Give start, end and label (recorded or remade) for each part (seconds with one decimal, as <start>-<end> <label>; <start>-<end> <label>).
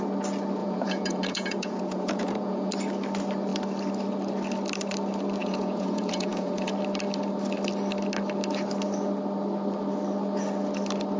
0.0-0.6 recorded; 0.6-2.7 remade; 2.7-5.4 recorded; 5.4-6.7 remade; 6.7-11.2 recorded